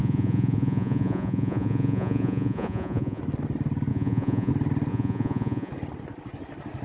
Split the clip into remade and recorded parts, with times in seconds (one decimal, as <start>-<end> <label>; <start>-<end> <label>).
0.0-3.2 remade; 3.2-3.9 recorded; 3.9-4.5 remade; 4.5-4.9 recorded; 4.9-5.7 remade; 5.7-6.8 recorded